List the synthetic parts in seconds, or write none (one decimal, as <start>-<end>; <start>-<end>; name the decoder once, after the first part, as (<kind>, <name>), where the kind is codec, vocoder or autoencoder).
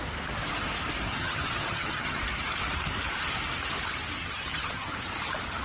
1.1-2.2 (vocoder, HiFi-GAN); 4.2-4.9